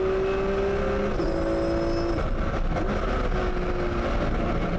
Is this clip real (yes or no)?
yes